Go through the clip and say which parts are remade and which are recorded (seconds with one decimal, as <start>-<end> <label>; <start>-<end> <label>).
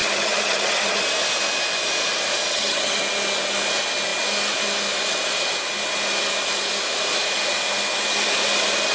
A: 0.0-1.0 remade; 1.0-2.5 recorded; 2.5-3.0 remade; 3.0-8.9 recorded